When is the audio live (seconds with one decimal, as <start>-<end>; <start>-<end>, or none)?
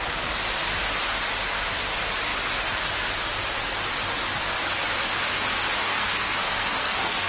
0.0-5.8